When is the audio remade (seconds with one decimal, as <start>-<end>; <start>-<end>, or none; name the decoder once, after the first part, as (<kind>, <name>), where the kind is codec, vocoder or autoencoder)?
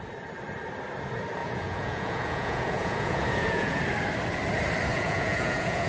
1.4-3.8 (vocoder, Vocos); 4.9-5.9